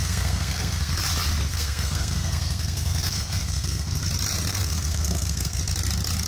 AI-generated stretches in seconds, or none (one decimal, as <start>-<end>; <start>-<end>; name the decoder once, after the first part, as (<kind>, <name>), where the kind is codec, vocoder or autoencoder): 0.0-1.0 (codec, SNAC); 1.5-4.0; 4.5-5.6